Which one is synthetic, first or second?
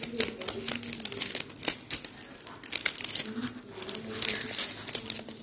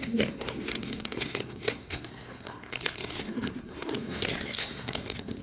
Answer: second